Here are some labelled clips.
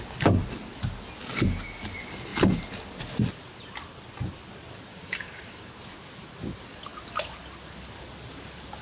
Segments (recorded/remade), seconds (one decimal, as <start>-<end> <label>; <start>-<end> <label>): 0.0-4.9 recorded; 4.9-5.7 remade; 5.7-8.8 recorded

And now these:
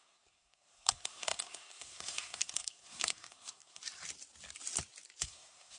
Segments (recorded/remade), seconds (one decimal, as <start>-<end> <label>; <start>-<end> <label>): 0.0-3.8 remade; 3.8-5.2 recorded; 5.2-5.8 remade

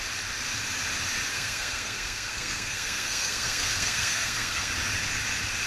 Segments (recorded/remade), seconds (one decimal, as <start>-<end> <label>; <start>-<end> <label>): 0.0-1.3 recorded; 1.3-4.7 remade; 4.7-5.7 recorded

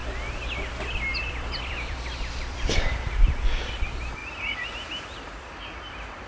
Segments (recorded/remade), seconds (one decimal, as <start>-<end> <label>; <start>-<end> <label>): 0.0-3.8 remade; 3.8-4.2 recorded; 4.2-4.7 remade; 4.7-6.3 recorded